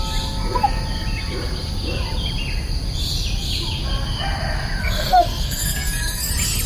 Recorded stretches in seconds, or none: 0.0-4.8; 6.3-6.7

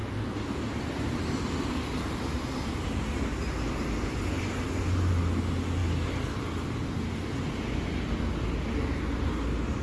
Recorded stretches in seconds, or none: 0.0-9.8